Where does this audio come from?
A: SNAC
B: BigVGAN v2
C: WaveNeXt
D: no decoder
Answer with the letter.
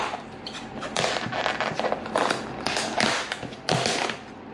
D